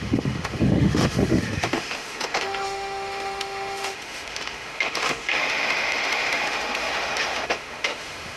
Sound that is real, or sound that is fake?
fake